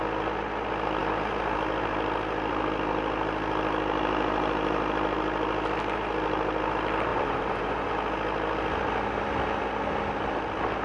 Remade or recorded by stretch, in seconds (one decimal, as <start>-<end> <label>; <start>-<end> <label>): 0.0-7.1 recorded; 7.1-7.9 remade; 7.9-10.8 recorded